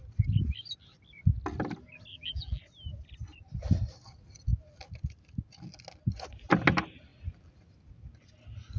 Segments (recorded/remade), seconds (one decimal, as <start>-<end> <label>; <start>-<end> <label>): 0.0-2.1 recorded; 2.1-2.6 remade; 2.6-8.8 recorded